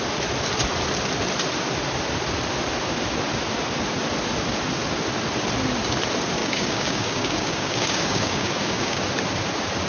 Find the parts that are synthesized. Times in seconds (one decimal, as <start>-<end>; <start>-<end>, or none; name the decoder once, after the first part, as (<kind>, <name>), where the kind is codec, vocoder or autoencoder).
6.4-9.0 (codec, DAC)